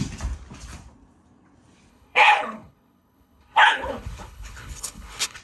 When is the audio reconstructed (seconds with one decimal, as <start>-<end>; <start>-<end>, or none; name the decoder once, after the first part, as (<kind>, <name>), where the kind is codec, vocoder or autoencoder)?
1.9-5.4 (codec, HILCodec)